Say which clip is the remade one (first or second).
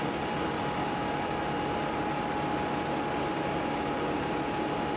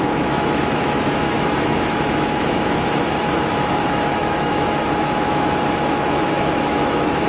second